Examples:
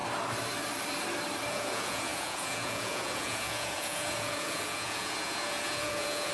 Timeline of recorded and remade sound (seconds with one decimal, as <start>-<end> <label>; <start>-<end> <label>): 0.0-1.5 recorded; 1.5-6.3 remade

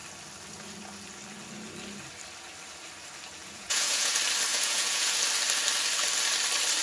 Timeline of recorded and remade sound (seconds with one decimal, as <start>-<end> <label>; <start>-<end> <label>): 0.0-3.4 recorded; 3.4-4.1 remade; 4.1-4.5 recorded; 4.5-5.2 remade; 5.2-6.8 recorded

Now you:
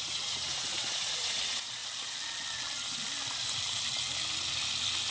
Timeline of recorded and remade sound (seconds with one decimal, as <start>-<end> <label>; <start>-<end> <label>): 0.0-1.8 remade; 1.8-5.1 recorded

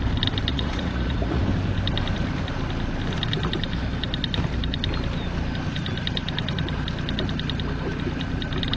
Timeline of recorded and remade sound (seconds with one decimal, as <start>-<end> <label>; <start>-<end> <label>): 0.0-0.5 recorded; 0.5-1.4 remade; 1.4-8.8 recorded

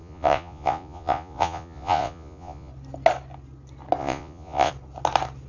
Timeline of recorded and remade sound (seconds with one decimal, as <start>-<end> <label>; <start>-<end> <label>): 0.0-2.7 remade; 2.7-4.0 recorded; 4.0-4.7 remade; 4.7-5.5 recorded

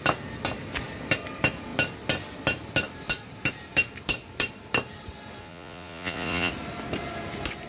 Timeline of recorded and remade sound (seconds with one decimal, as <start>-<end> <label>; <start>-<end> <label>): 0.0-5.4 recorded; 5.4-6.5 remade; 6.5-7.7 recorded